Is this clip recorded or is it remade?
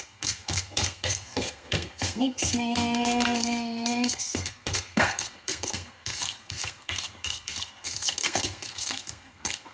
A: remade